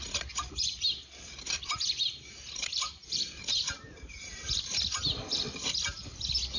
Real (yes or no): no